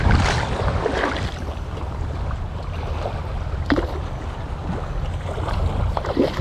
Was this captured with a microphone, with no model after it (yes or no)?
yes